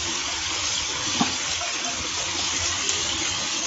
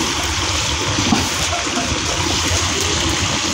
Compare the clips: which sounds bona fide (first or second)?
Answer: second